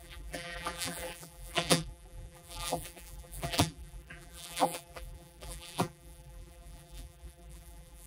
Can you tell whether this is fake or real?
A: fake